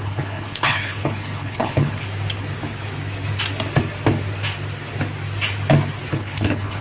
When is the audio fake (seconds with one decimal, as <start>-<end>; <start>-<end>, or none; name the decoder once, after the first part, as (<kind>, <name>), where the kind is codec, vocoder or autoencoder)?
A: 0.0-2.0 (codec, HILCodec); 6.1-6.8